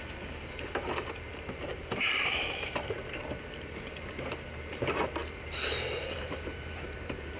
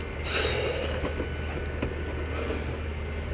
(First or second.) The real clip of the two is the second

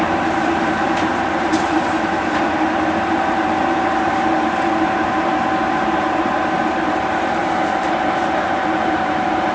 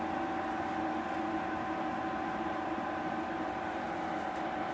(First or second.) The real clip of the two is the second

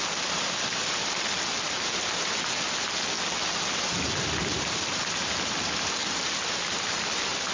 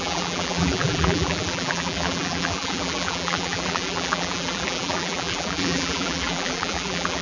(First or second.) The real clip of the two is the first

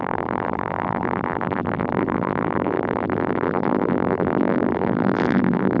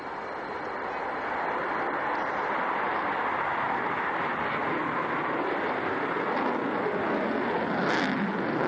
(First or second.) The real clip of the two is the second